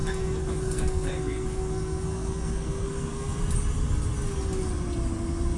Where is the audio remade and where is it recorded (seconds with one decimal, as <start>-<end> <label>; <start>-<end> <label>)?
0.0-3.4 remade; 3.4-5.6 recorded